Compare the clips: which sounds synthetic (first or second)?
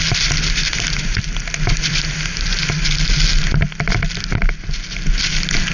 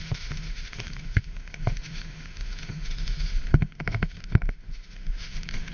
second